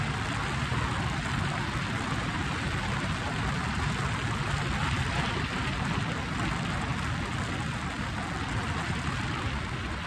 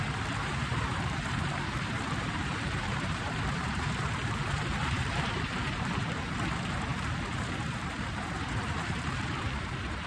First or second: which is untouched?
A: first